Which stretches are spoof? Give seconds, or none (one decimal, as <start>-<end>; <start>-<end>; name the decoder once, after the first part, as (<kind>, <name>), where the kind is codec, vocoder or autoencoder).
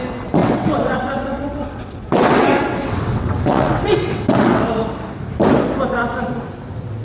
0.4-4.6 (vocoder, WaveNeXt)